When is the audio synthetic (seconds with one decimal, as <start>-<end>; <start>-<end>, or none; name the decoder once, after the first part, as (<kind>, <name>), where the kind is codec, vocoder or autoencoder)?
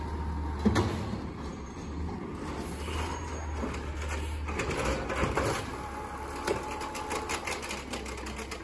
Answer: none